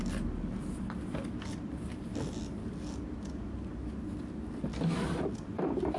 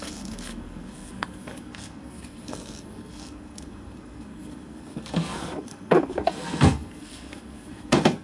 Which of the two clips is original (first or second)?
first